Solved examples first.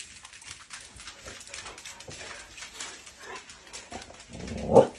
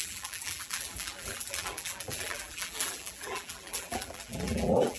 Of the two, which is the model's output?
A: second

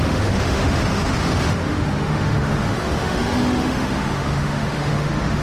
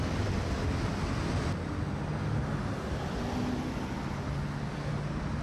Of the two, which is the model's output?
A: first